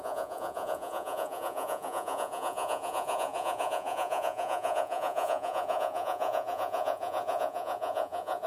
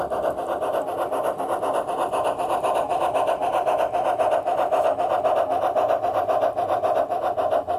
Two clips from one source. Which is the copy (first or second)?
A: first